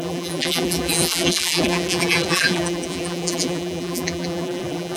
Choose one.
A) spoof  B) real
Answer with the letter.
A